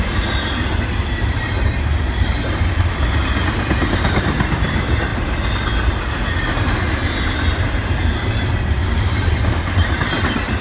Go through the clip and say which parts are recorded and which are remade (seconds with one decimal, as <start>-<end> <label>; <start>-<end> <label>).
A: 0.0-10.6 recorded

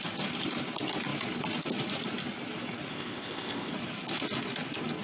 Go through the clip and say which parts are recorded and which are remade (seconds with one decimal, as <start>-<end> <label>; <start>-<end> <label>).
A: 0.0-2.9 recorded; 2.9-3.7 remade; 3.7-5.0 recorded

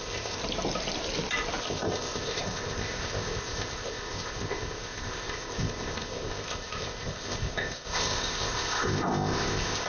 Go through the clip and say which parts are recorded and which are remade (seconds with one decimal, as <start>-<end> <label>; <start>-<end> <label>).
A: 0.0-0.4 remade; 0.4-1.6 recorded; 1.6-9.9 remade

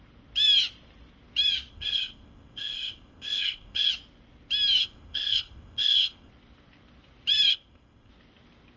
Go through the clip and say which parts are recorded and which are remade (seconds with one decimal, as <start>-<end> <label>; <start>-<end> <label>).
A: 0.0-1.7 recorded; 1.7-3.9 remade; 3.9-4.8 recorded; 4.8-6.3 remade; 6.3-7.5 recorded; 7.5-8.1 remade; 8.1-8.8 recorded

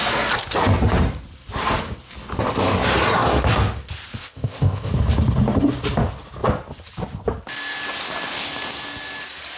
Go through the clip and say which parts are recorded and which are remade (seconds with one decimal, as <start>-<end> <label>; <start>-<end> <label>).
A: 0.0-4.2 recorded; 4.2-4.9 remade; 4.9-9.6 recorded